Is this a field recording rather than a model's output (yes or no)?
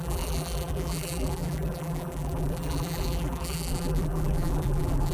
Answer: no